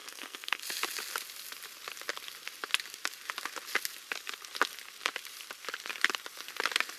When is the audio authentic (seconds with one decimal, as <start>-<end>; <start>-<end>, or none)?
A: 0.6-7.0